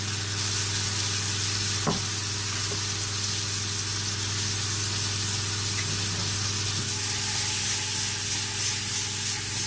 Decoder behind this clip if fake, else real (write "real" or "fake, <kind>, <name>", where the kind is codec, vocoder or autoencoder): real